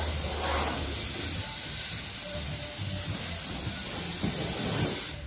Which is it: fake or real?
real